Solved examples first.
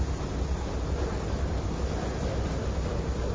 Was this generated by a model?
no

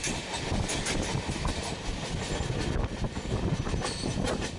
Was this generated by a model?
no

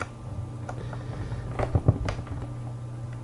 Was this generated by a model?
no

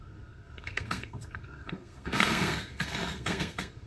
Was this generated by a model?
yes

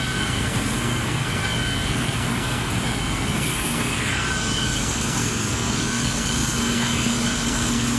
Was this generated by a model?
yes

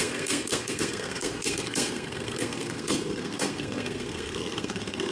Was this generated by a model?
yes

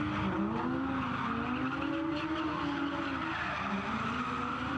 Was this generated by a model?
no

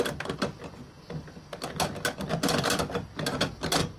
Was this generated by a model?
no